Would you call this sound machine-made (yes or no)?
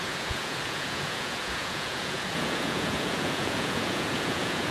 yes